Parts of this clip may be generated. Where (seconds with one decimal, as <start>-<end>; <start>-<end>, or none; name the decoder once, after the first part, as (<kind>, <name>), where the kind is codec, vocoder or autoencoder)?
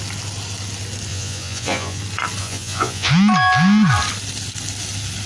1.1-2.0 (vocoder, Vocos); 2.4-3.1